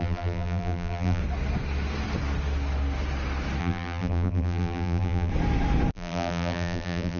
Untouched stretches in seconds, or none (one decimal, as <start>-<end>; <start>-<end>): 1.2-3.6; 5.3-5.9

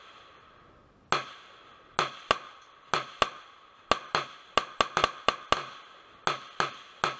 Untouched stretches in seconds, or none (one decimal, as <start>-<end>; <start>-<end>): 0.0-7.2

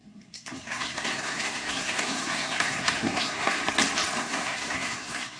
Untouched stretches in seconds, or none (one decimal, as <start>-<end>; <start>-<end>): 3.6-4.2